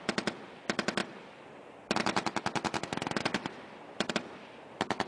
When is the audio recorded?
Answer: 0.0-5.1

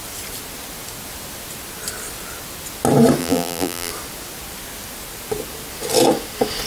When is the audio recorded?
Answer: 0.0-3.2; 3.9-6.7